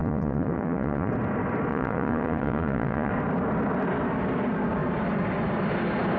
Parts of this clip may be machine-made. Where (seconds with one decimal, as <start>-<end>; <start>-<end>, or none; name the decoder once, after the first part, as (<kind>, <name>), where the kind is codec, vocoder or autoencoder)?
0.0-1.1 (vocoder, Vocos); 1.7-3.1